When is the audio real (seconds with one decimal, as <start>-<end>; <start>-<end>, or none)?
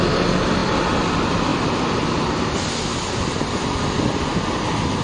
0.0-5.0